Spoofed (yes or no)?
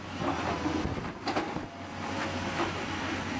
no